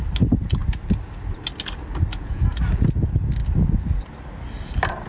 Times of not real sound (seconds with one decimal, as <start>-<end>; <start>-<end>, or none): 2.1-2.6